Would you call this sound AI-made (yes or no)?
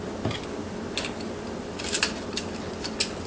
no